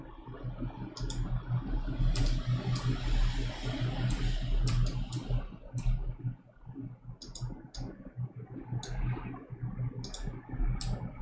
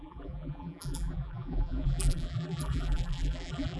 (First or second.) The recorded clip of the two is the first